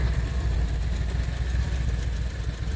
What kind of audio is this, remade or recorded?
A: recorded